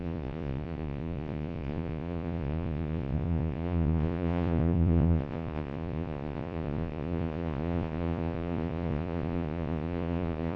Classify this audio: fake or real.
fake